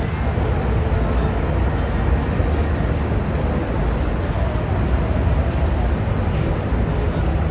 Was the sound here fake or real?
real